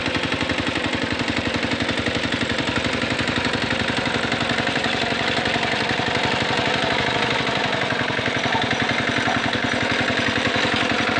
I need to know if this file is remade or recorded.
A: remade